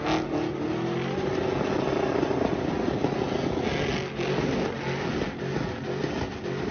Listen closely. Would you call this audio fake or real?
real